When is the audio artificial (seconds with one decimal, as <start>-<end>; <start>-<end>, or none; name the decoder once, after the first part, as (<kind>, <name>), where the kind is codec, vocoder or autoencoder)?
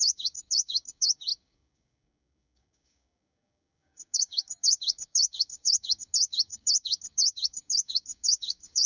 0.0-8.9 (codec, DAC)